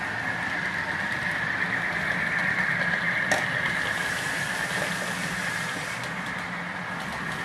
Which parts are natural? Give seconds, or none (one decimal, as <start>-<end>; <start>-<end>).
0.0-7.4